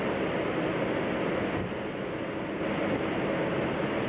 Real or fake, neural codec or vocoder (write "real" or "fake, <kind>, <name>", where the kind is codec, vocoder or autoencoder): real